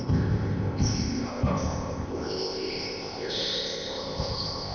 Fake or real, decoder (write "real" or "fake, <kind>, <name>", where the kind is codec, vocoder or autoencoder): fake, codec, ZipCodec